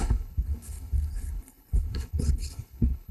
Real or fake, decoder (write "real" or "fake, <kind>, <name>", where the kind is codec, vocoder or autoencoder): fake, codec, HILCodec